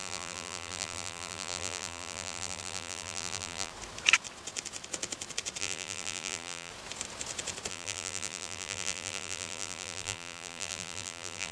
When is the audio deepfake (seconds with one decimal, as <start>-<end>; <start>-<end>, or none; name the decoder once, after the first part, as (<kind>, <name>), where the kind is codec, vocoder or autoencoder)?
0.0-3.7 (vocoder, BigVGAN v2); 5.6-6.7; 7.7-11.5